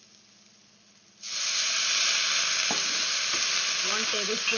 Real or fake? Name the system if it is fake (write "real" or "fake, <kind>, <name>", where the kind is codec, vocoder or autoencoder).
real